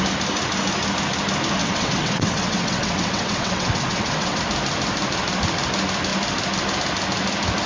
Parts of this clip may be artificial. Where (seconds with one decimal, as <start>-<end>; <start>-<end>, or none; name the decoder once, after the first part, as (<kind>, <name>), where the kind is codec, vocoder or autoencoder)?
1.6-4.4 (vocoder, WaveNeXt)